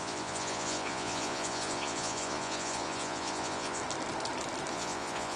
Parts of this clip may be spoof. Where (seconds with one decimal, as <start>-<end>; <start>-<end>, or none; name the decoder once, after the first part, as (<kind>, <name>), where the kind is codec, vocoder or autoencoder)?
0.0-3.8 (vocoder, Vocos); 4.7-5.4